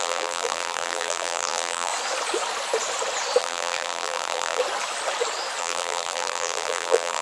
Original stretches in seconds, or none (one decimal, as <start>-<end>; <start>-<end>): 1.9-3.4; 4.6-5.6